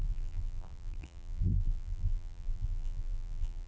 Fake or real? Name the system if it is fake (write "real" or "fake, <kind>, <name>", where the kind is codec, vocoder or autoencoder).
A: fake, vocoder, BigVGAN v2